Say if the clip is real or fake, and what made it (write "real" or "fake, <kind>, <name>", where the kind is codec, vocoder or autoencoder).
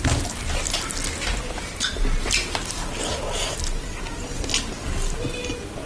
real